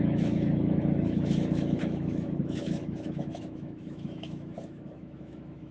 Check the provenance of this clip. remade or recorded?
remade